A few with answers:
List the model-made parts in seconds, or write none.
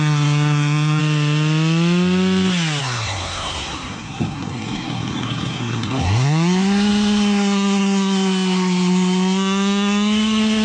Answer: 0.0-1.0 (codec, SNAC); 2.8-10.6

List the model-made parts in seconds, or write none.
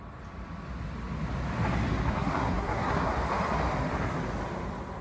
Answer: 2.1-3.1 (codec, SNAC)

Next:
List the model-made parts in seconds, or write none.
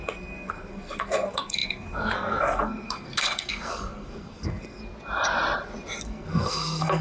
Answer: 0.0-4.8 (codec, SNAC); 6.0-7.0